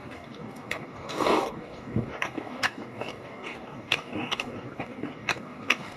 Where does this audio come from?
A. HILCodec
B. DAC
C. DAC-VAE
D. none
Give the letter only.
B